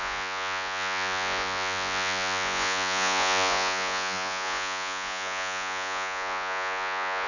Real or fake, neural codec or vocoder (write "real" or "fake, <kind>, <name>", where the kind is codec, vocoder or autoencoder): fake, vocoder, Vocos